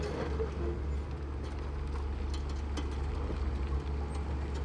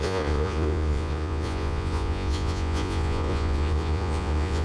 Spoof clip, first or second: second